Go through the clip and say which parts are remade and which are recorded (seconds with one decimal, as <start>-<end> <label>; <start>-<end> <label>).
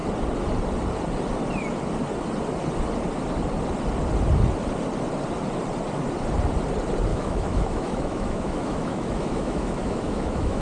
0.0-7.1 recorded; 7.1-10.6 remade